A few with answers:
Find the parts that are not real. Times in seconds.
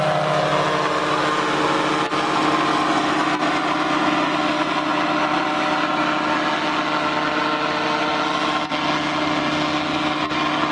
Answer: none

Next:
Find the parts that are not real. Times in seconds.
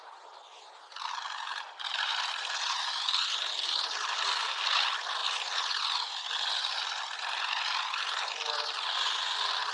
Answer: none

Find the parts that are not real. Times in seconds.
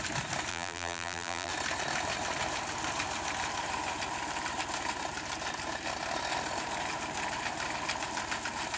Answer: 0.5-1.5 (vocoder, BigVGAN v2)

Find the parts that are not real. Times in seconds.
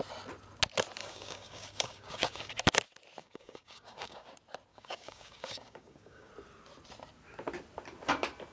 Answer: 1.0-2.6 (codec, DAC); 3.2-4.3; 4.7-6.3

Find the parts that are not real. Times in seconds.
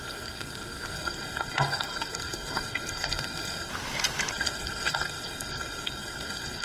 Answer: 0.0-3.7 (codec, SNAC); 4.3-6.6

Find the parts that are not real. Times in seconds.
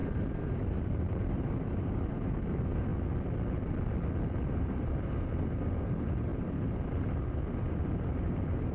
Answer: 0.0-2.9 (vocoder, BigVGAN v2); 4.4-8.7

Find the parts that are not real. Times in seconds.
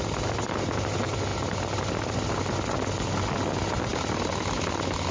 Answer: none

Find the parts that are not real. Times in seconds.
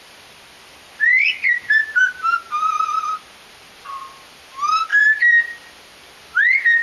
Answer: none